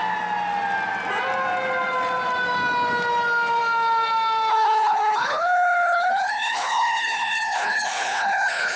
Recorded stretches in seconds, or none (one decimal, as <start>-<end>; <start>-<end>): 0.0-4.5